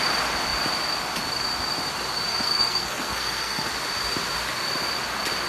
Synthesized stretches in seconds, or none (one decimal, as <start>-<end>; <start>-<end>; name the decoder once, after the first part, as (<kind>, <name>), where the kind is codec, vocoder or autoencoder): 2.3-3.7 (codec, SNAC)